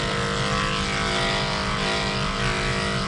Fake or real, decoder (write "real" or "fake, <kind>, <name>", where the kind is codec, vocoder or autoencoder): real